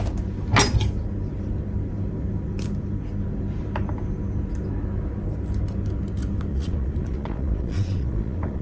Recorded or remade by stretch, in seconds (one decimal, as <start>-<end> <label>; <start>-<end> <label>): 0.0-6.5 recorded; 6.5-8.6 remade